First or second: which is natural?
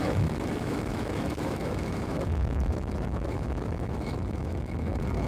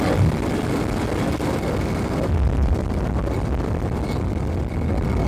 second